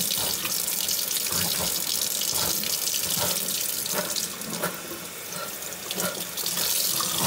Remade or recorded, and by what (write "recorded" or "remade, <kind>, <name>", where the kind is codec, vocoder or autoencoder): recorded